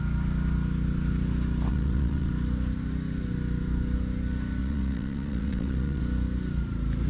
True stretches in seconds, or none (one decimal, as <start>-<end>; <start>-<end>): 0.0-1.7; 2.3-4.6; 6.0-7.1